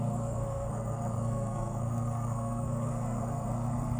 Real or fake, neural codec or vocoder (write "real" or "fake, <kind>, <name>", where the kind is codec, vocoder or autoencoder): fake, codec, SNAC